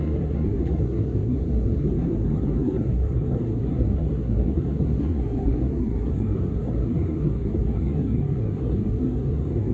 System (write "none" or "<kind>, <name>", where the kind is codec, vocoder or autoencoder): codec, SNAC